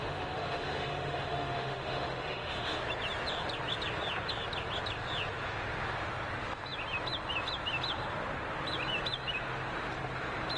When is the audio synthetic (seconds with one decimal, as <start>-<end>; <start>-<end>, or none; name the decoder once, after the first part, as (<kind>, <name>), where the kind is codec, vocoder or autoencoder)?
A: 0.0-2.8 (autoencoder, DAC-VAE)